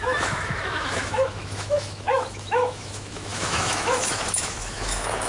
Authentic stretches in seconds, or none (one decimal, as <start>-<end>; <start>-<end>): none